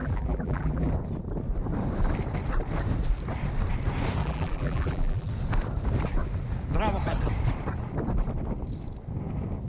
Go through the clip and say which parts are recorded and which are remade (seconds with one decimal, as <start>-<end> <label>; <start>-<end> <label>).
0.0-0.9 remade; 0.9-4.2 recorded; 4.2-5.3 remade; 5.3-9.7 recorded